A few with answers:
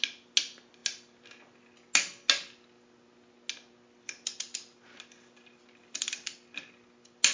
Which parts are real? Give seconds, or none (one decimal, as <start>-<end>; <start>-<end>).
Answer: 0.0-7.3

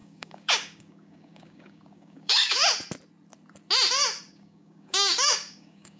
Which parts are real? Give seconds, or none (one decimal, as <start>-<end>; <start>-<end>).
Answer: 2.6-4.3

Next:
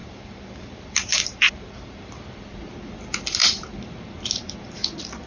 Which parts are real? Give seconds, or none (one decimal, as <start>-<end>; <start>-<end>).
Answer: 2.2-3.4; 4.1-5.3

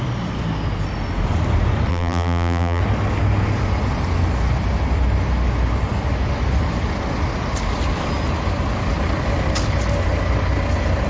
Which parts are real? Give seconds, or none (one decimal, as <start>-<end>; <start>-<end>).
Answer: 0.0-1.9; 2.8-11.1

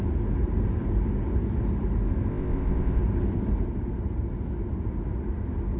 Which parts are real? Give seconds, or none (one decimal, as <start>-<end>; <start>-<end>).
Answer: 0.0-2.3; 3.0-5.8

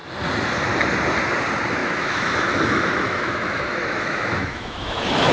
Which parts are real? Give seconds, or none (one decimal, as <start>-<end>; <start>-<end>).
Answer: 0.0-1.8